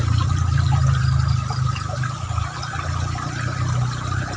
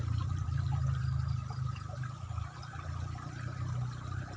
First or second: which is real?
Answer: first